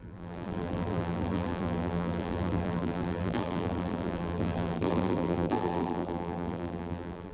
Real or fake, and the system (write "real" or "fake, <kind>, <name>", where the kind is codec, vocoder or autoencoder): fake, vocoder, BigVGAN v2